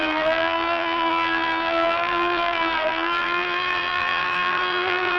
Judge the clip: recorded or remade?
remade